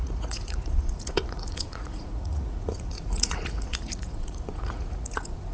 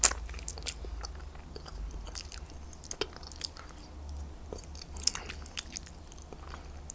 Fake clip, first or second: first